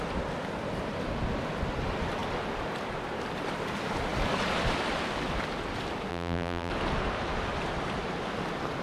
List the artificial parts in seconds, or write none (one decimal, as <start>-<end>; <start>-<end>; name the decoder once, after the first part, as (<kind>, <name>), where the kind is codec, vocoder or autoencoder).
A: 6.1-6.7 (vocoder, BigVGAN v2)

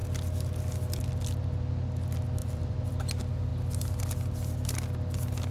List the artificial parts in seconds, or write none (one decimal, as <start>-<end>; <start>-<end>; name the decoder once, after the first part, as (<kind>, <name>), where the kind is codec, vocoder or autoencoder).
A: 2.4-3.0 (vocoder, BigVGAN v2)

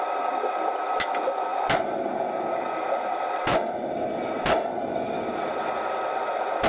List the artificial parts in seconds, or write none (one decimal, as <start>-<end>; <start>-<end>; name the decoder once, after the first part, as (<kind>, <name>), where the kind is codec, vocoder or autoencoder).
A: none